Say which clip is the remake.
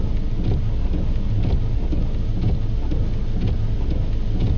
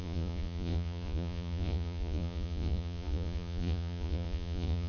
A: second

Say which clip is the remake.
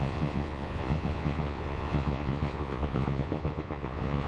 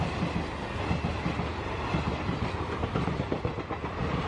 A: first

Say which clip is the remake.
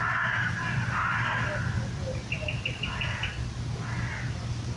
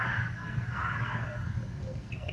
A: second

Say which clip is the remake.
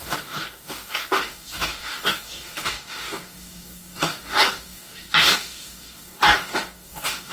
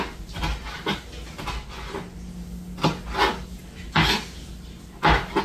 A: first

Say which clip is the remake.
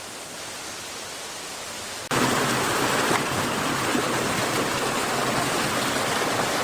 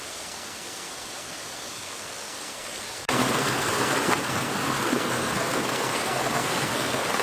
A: second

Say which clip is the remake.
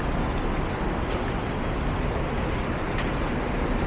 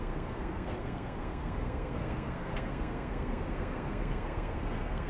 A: second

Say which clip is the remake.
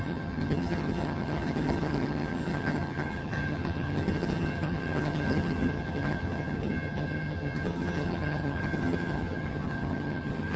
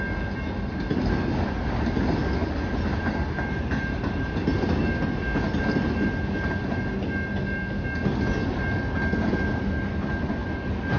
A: first